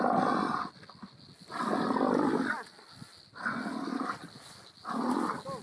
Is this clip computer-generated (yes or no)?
no